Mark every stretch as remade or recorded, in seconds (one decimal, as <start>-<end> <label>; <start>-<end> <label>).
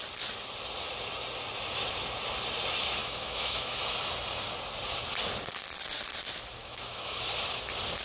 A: 0.0-3.0 recorded; 3.0-3.8 remade; 3.8-6.6 recorded; 6.6-7.2 remade; 7.2-8.0 recorded